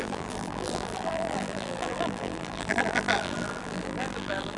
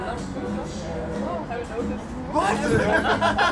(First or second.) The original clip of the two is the second